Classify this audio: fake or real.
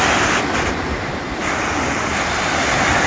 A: real